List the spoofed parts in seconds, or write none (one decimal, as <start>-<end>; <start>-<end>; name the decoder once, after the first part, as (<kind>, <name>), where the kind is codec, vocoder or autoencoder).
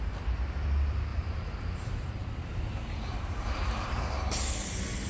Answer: 1.1-4.0 (vocoder, BigVGAN v2)